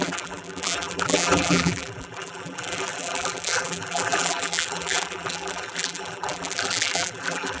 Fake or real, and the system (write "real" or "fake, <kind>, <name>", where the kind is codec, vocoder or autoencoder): fake, vocoder, BigVGAN v2